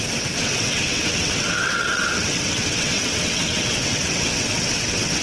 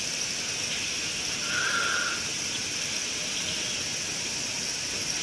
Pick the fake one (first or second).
first